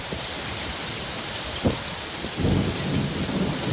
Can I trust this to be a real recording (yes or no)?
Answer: yes